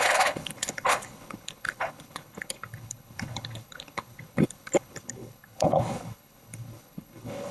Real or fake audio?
fake